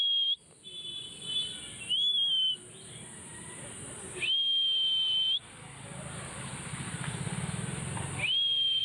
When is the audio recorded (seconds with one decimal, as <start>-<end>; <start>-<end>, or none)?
0.0-8.8